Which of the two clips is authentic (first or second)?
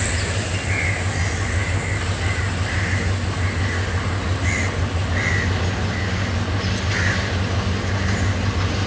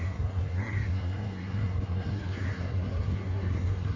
first